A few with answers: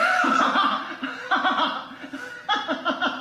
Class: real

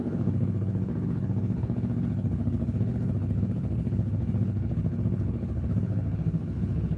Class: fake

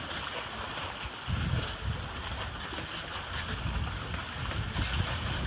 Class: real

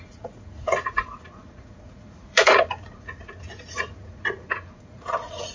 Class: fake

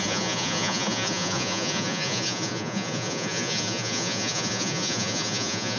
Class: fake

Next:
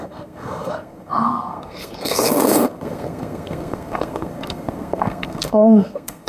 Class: fake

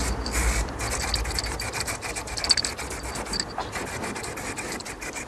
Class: real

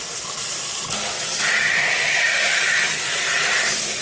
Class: real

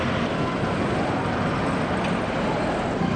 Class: real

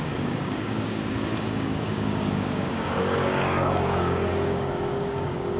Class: fake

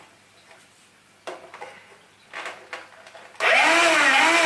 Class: real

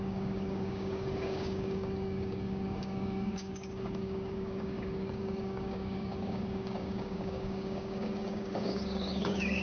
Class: fake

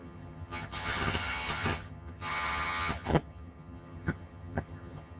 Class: fake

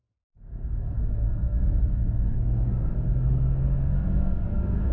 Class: fake